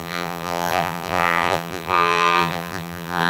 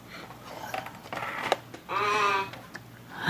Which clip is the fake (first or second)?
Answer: first